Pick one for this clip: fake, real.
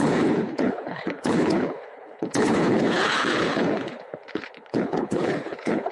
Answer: fake